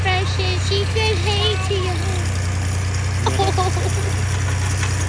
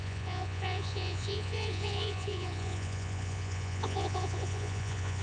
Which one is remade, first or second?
second